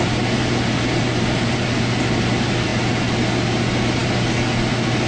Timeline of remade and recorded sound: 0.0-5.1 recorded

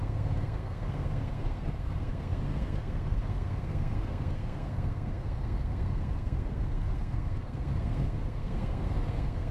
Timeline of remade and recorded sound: 0.0-9.5 remade

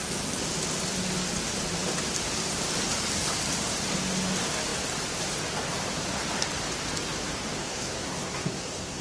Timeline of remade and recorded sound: 0.0-7.6 recorded; 7.6-9.0 remade

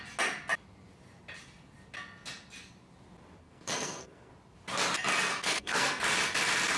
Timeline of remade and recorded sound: 0.0-3.4 recorded; 3.4-4.3 remade; 4.3-5.3 recorded; 5.3-6.0 remade; 6.0-6.8 recorded

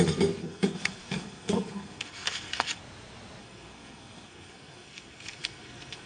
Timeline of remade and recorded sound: 0.0-0.4 recorded; 0.4-2.8 remade; 2.8-3.4 recorded; 3.4-6.1 remade

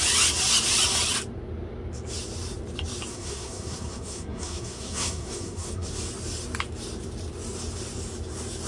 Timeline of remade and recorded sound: 0.0-3.1 recorded; 3.1-5.9 remade; 5.9-8.7 recorded